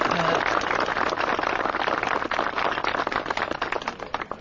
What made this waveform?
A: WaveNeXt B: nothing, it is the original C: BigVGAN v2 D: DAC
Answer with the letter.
B